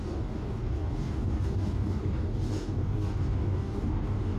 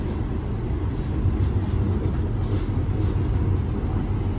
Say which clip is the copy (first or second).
first